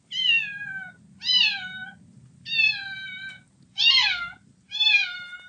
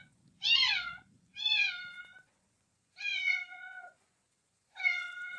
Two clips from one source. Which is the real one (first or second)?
first